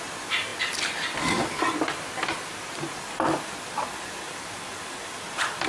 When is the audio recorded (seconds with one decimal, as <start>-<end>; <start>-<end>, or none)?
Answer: 0.0-5.7